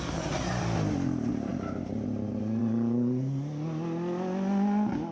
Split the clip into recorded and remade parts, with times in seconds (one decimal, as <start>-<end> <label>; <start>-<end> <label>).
0.0-5.1 recorded